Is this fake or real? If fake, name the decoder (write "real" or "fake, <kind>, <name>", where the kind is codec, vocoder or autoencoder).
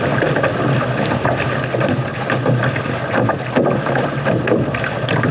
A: real